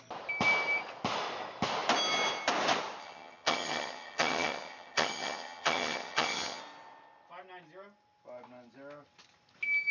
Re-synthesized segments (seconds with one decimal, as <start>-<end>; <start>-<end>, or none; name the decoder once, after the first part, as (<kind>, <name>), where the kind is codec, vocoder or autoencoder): 3.0-6.6 (vocoder, HiFi-GAN)